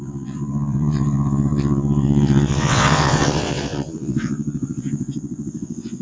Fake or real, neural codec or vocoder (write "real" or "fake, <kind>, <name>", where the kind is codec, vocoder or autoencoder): fake, vocoder, WaveNeXt